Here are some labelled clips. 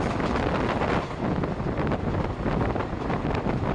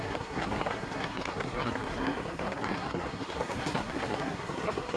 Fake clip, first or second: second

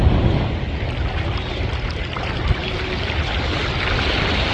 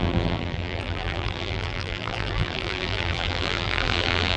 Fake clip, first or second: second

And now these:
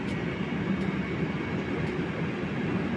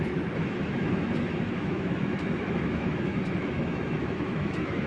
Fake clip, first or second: second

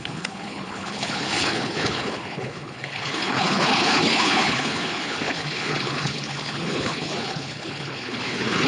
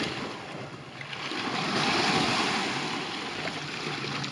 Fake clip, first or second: first